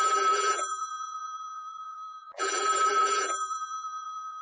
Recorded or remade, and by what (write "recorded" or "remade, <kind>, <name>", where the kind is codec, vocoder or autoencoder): remade, vocoder, BigVGAN v2